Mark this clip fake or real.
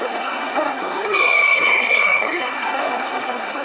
fake